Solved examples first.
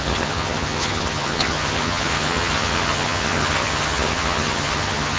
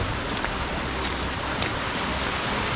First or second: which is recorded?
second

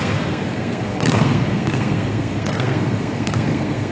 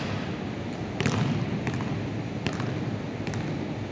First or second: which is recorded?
second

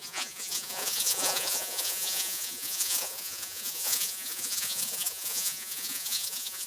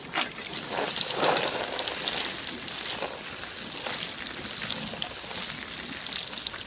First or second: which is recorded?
second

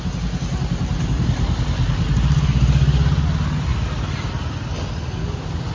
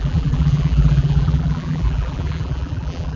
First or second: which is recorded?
first